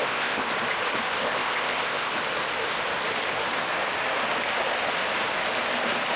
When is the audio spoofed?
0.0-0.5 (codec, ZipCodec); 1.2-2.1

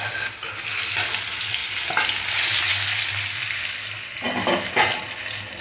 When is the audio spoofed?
none

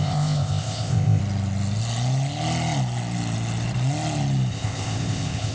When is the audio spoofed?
0.0-1.2 (codec, ZipCodec); 4.5-5.5

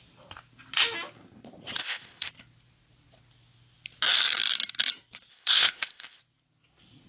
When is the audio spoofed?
1.8-2.3 (codec, ZipCodec); 5.3-6.2

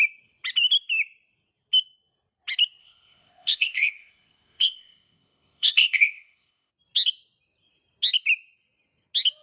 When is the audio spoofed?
2.8-6.7 (codec, ZipCodec)

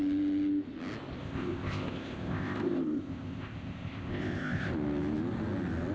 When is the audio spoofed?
1.2-4.7 (codec, ZipCodec)

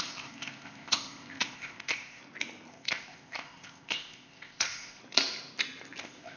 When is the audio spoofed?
0.0-2.2 (codec, ZipCodec); 2.7-5.0; 6.0-6.4

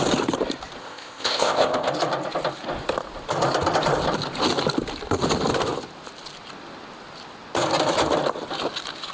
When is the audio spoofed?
0.8-1.9 (codec, ZipCodec)